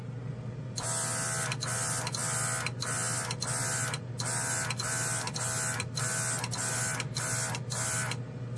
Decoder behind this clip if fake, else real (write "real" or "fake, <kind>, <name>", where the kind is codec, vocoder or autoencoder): real